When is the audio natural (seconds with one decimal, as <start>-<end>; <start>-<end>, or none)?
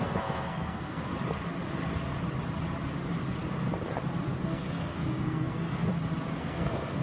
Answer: 1.1-4.3; 5.9-6.4